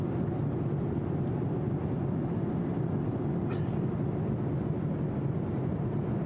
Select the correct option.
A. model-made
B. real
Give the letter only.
B